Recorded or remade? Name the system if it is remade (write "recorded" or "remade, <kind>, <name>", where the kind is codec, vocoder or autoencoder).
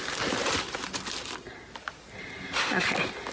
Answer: recorded